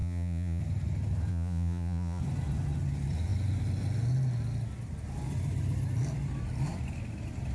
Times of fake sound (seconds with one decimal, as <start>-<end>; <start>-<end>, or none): 0.0-0.6; 1.3-2.2